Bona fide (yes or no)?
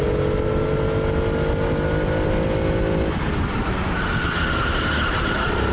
yes